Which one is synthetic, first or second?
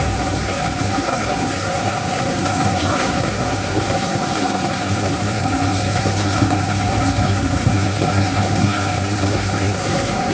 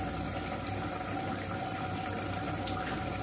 first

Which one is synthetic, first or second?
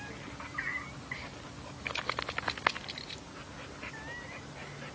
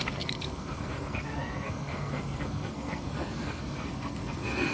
second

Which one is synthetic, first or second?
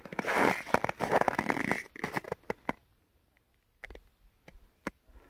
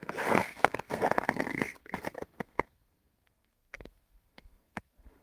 second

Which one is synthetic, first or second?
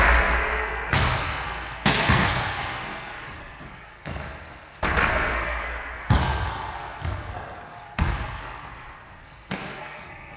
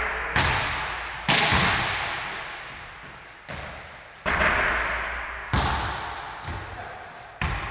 first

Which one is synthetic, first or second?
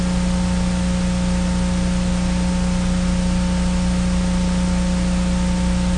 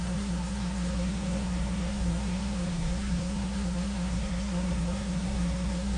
second